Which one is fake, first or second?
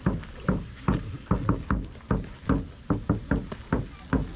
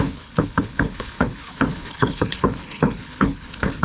second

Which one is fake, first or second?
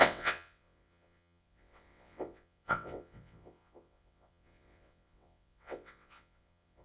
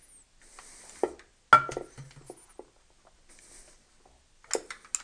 first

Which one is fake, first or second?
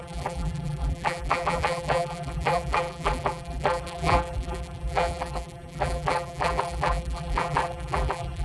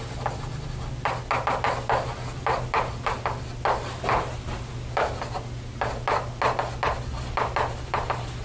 first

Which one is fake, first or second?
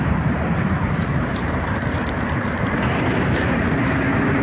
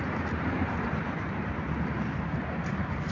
first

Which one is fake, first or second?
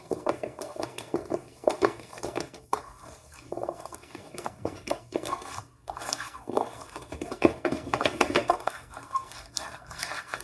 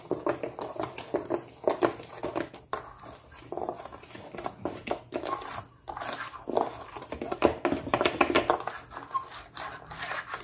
first